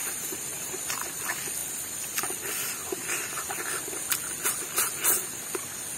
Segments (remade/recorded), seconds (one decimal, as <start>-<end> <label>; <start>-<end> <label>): 0.0-0.8 remade; 0.8-6.0 recorded